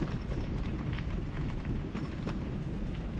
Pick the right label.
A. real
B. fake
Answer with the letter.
B